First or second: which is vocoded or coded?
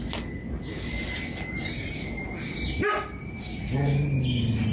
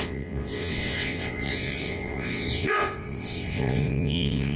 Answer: second